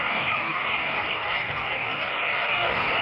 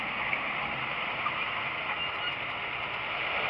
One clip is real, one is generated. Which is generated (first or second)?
first